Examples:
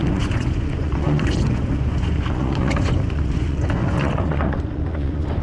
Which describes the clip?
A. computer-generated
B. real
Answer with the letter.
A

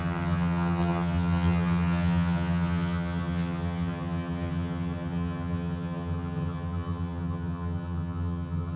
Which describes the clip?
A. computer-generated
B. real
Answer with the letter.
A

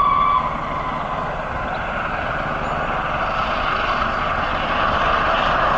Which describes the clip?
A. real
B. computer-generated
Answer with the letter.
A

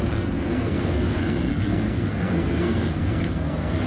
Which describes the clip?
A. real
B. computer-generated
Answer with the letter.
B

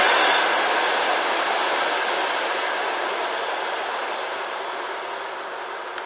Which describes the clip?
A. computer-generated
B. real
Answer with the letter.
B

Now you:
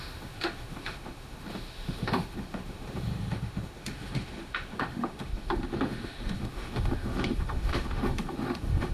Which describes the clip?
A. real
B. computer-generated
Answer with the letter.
B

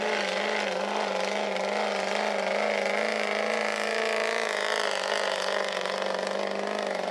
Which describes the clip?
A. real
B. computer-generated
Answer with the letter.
A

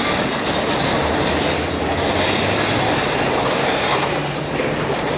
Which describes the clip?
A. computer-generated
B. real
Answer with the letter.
B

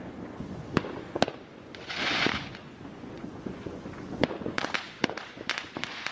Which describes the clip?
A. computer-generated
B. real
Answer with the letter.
A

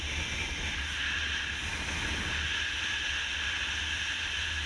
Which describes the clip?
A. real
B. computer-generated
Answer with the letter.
A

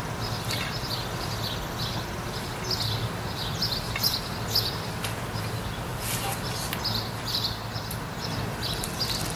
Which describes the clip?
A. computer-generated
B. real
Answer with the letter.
B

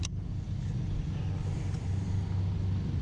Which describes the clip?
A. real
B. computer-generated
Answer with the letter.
A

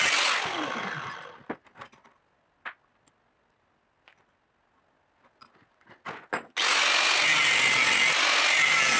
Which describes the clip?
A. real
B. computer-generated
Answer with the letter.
A